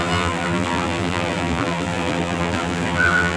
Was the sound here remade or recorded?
remade